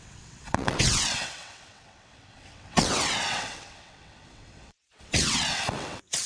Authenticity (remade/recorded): remade